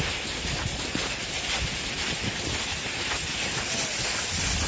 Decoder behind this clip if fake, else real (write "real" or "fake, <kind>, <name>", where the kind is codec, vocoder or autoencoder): real